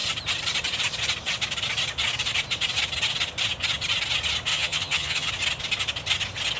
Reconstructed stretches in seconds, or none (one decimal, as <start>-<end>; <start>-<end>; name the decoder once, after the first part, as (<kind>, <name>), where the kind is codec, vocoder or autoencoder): 4.5-5.3 (vocoder, HiFi-GAN)